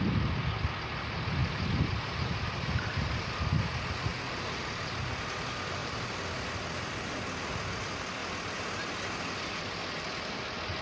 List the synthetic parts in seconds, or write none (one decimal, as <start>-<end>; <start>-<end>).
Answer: 1.4-3.3; 4.1-4.9; 5.8-6.9